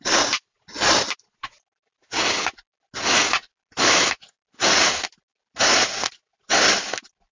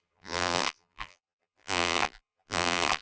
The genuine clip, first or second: first